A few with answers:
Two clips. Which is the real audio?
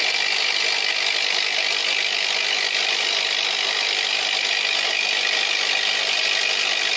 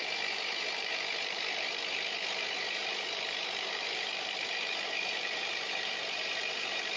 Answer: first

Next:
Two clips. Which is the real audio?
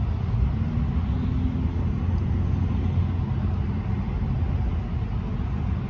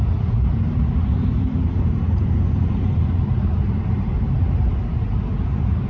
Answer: first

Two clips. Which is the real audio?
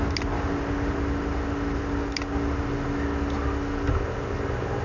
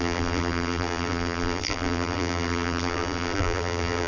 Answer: first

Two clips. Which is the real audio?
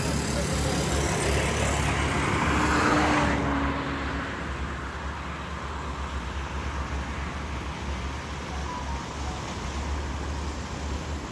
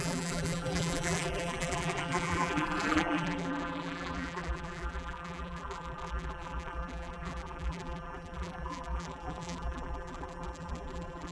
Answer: first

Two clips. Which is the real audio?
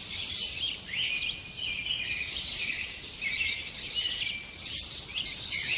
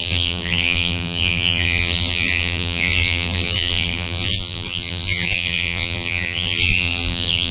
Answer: first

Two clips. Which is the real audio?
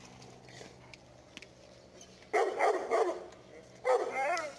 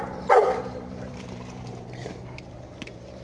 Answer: first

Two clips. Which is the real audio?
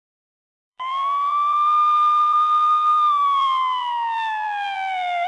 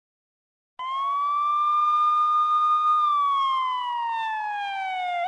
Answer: second